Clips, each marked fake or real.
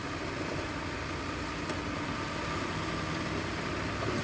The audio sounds real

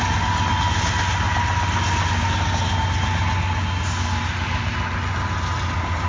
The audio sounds real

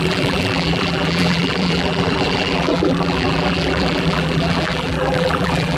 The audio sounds fake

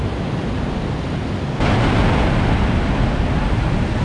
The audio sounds real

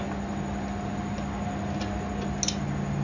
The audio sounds real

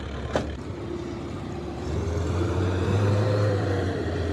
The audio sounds fake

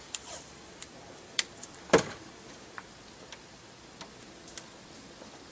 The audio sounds fake